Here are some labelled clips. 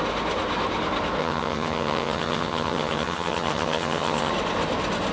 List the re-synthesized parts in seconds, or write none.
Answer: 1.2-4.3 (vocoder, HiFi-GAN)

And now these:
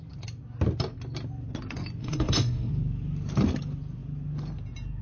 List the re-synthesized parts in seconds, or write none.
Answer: 2.0-2.7 (codec, SNAC)

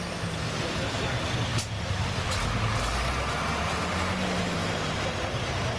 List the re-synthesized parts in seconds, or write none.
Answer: none

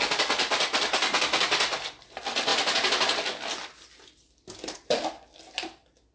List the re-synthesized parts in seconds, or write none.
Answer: none

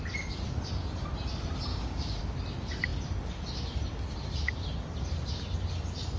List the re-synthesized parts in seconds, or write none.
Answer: 1.7-2.2 (codec, DAC)

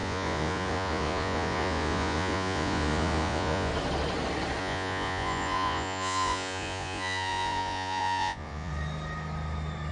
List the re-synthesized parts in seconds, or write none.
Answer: 0.0-3.7 (vocoder, Vocos); 4.6-8.7

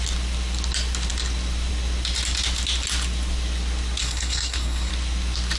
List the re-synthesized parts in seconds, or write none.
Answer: 4.0-4.9 (codec, SNAC)